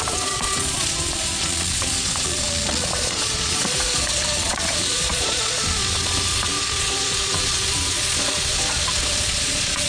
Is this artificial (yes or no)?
yes